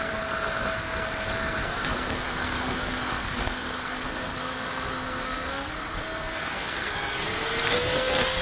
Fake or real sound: fake